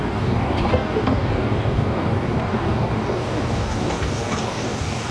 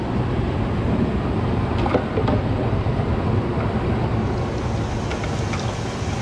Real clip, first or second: second